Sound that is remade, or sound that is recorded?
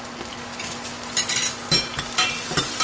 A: recorded